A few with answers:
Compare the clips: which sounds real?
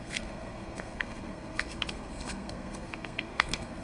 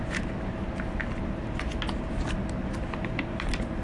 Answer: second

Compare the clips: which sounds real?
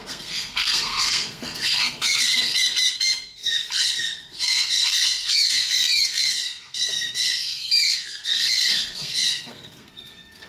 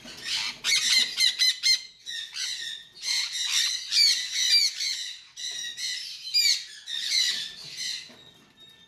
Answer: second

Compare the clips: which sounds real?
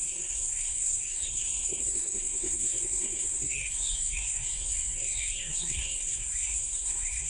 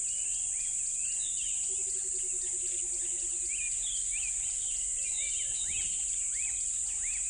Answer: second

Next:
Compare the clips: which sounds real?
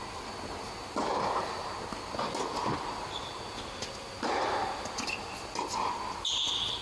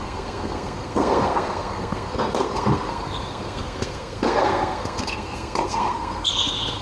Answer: first